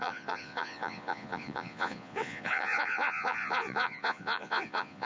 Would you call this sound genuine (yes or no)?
no